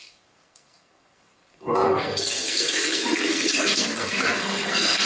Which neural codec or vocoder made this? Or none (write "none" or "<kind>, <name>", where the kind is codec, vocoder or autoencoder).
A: codec, SNAC